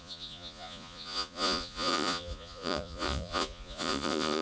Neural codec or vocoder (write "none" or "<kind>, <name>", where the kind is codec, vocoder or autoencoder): vocoder, Vocos